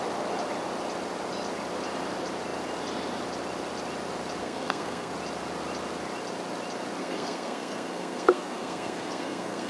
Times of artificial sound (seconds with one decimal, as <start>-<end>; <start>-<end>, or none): 4.4-5.1; 7.0-9.7